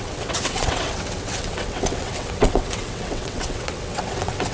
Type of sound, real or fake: fake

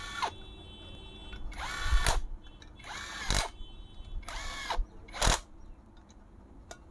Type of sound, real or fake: real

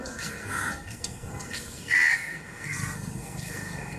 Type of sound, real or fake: fake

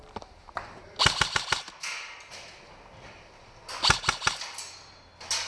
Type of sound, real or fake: real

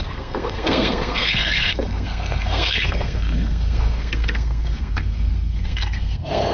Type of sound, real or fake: fake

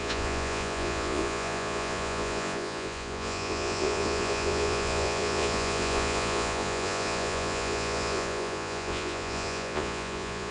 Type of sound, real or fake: fake